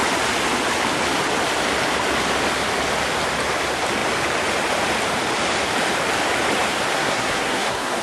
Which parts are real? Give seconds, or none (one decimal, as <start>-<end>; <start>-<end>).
0.0-6.9